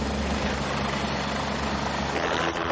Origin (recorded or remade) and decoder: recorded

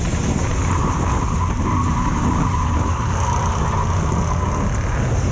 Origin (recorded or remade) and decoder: recorded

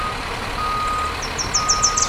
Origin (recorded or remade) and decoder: recorded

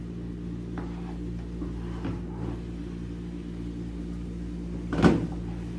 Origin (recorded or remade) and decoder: recorded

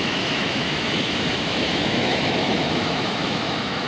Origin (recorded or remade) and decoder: remade, autoencoder, DAC-VAE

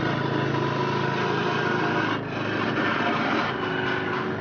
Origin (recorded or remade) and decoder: recorded